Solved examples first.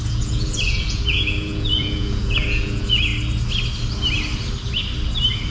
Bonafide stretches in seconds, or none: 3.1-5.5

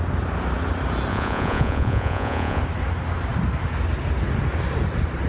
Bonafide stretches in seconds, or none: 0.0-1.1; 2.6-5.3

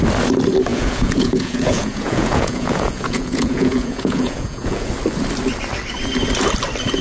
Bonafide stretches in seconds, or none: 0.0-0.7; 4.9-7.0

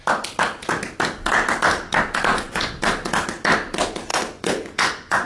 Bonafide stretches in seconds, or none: 0.0-2.3; 2.8-4.1

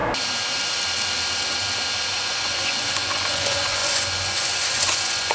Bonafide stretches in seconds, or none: 0.0-2.1

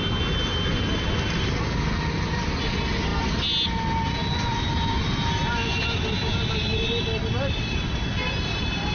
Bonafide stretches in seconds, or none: 0.0-8.9